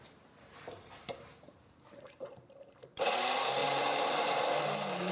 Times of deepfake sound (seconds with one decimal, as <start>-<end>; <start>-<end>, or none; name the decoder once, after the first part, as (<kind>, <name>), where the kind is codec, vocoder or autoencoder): 0.0-3.1 (vocoder, BigVGAN v2); 3.6-4.4